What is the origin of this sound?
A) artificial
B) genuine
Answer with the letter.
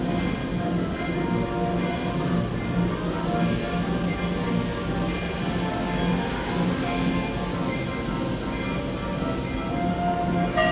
B